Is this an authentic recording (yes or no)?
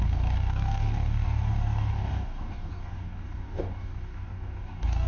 no